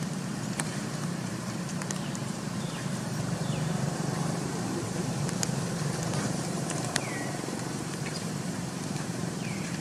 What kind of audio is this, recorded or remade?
remade